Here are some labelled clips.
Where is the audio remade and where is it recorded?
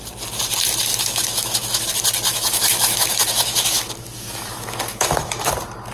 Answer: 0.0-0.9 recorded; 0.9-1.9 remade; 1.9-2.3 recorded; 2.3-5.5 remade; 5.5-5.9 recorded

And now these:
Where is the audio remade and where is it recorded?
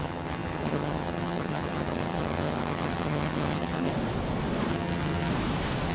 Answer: 0.0-3.9 remade; 3.9-4.7 recorded; 4.7-5.3 remade; 5.3-5.9 recorded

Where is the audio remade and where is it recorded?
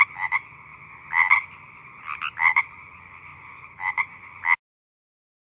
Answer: 0.0-5.5 recorded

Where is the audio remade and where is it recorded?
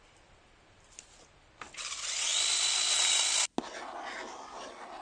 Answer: 0.0-5.0 recorded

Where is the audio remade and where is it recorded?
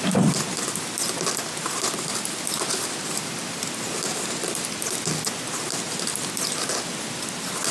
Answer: 0.0-7.7 recorded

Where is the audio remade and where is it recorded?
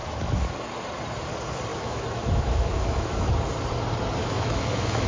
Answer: 0.0-0.5 remade; 0.5-1.7 recorded; 1.7-3.3 remade; 3.3-4.2 recorded; 4.2-5.1 remade